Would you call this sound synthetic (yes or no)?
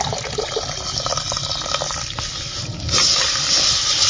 no